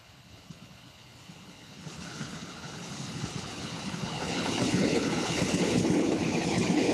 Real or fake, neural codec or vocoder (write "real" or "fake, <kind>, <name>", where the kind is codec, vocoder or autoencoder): fake, codec, HILCodec